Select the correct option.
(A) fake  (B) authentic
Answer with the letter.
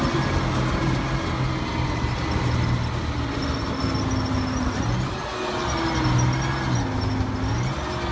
B